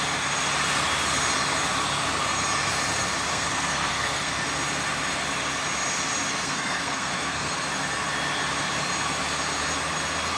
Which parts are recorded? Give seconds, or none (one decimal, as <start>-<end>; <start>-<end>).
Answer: 0.0-3.3; 4.3-6.3; 7.5-10.4